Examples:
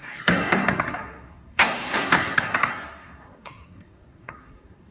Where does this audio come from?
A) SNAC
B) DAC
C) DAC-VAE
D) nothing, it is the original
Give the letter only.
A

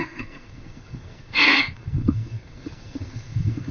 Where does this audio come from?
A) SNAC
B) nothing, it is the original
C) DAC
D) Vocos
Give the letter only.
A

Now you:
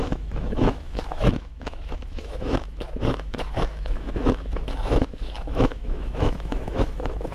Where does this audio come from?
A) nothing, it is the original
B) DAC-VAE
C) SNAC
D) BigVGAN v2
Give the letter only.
B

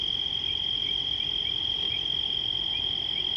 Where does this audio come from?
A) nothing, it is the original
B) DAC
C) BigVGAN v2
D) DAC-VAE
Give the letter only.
A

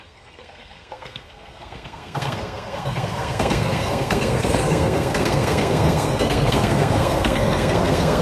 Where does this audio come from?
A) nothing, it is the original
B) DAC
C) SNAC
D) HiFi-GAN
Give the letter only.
C